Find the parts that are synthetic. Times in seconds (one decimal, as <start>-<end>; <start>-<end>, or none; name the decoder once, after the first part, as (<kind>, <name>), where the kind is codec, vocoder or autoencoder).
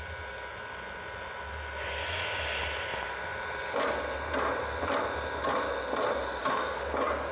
6.4-7.3 (codec, DAC)